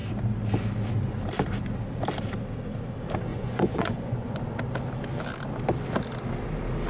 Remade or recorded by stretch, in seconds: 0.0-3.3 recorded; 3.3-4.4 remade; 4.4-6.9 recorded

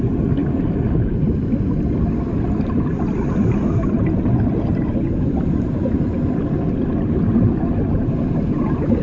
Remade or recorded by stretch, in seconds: 0.0-9.0 recorded